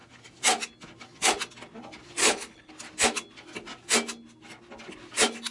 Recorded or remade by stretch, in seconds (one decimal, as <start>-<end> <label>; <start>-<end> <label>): 0.0-2.2 recorded; 2.2-2.7 remade; 2.7-5.5 recorded